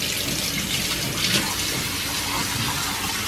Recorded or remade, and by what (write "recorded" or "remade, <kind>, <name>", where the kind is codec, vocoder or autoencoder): recorded